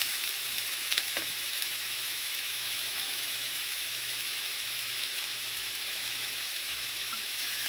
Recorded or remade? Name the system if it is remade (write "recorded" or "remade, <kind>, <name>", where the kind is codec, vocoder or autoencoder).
remade, autoencoder, DAC-VAE